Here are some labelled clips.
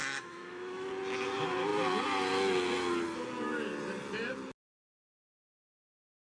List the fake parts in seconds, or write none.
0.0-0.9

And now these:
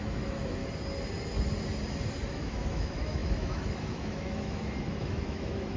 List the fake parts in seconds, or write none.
0.0-0.6; 2.3-5.8

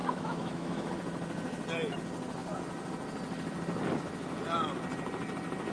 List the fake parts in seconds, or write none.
0.0-0.9

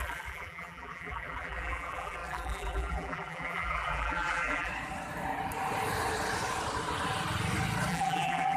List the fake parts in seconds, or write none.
0.0-4.7; 7.9-8.6

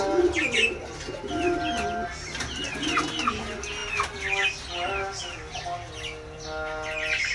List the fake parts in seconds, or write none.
none